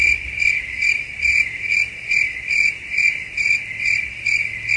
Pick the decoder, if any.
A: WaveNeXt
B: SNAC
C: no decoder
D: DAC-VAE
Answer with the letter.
C